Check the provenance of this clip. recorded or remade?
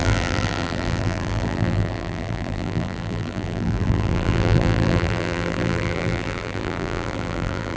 remade